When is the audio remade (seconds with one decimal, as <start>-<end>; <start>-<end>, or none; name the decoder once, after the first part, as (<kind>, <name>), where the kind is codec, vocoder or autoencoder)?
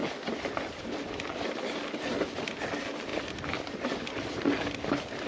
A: none